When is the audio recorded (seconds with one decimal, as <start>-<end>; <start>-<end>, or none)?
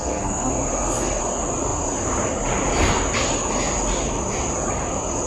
1.2-5.3